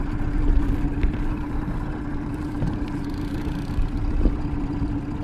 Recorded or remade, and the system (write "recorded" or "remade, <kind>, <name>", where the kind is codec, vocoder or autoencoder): recorded